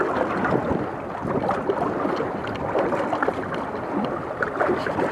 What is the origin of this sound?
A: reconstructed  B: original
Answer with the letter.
B